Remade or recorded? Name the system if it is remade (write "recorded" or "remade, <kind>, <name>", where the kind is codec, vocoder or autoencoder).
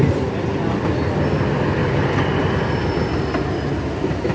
recorded